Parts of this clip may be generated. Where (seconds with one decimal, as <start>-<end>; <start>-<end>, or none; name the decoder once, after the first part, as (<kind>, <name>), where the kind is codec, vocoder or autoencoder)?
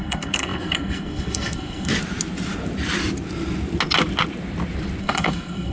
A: 0.0-1.9 (codec, SNAC); 5.0-5.7